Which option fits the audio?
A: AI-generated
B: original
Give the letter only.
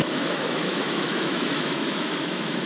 A